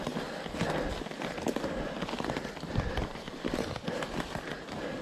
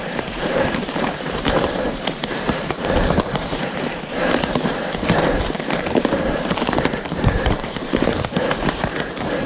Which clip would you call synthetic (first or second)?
second